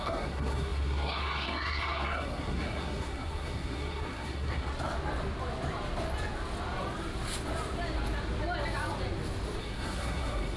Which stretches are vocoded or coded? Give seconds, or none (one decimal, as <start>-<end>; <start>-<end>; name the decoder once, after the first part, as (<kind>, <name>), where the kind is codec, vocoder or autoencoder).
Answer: 0.0-4.7 (codec, SNAC); 9.6-10.6